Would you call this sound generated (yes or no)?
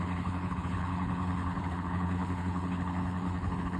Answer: yes